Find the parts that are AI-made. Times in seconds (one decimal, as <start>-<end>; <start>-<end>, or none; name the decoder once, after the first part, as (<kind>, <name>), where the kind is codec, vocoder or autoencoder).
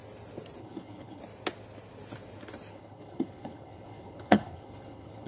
0.6-1.2 (codec, HILCodec); 2.7-5.3